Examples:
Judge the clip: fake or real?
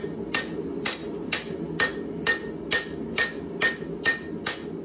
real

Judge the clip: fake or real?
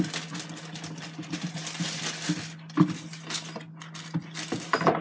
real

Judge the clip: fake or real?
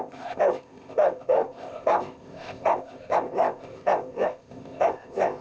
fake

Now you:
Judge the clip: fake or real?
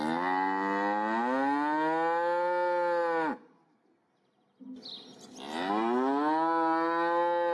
real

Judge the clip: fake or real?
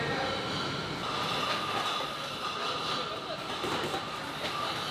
real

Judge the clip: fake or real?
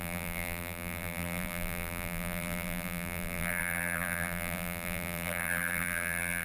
fake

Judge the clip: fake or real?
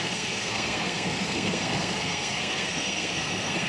fake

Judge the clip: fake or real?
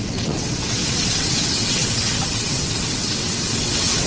fake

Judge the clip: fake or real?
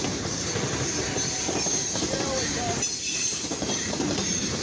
fake